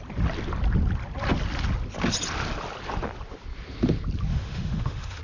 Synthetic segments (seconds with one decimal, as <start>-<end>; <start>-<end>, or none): 4.3-5.2

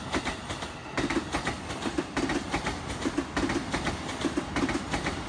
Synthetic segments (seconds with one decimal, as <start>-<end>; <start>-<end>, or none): none